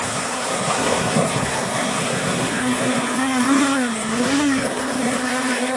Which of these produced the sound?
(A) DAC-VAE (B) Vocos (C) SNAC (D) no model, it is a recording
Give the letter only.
C